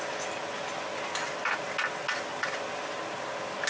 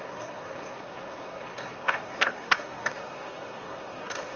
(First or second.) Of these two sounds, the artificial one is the second